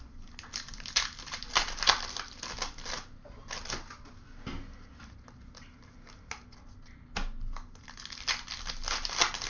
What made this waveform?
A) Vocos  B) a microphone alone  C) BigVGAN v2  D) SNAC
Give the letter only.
B